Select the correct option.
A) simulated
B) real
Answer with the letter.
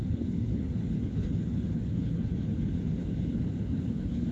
A